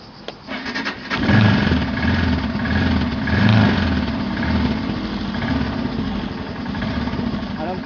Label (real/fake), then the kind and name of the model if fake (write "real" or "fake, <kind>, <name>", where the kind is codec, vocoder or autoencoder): real